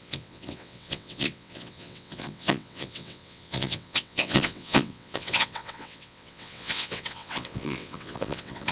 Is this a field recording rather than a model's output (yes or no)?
no